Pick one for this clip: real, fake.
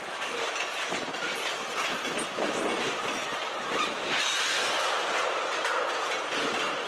real